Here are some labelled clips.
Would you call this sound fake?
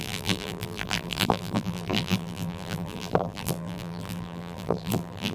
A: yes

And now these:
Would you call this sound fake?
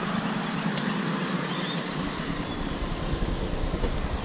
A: yes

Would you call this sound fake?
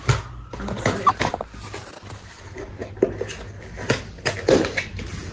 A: no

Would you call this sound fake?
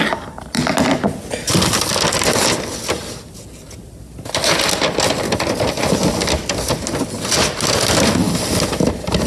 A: no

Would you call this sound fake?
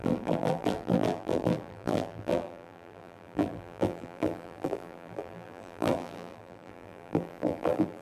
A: yes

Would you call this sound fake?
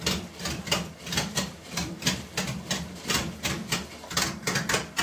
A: yes